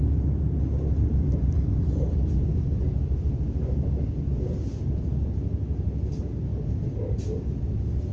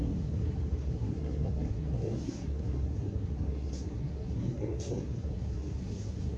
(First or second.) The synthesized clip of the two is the second